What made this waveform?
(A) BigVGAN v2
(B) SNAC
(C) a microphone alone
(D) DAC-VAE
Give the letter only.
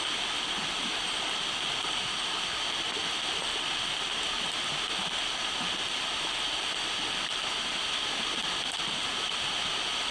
C